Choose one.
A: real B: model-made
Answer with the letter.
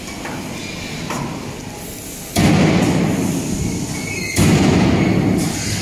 A